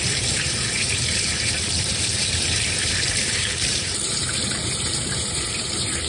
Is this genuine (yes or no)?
no